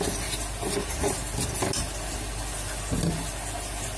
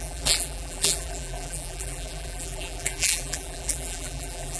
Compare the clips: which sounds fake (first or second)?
second